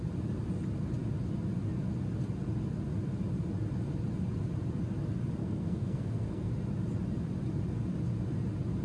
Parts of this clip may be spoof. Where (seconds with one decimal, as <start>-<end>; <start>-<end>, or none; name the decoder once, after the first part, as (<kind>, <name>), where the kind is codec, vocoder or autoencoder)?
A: 5.4-6.5 (codec, SNAC)